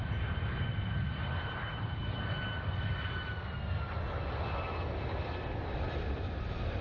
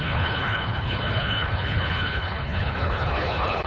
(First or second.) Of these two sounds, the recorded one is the first